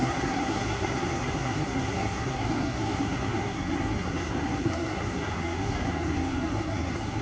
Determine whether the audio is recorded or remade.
remade